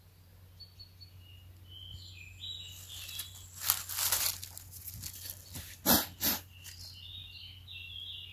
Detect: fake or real real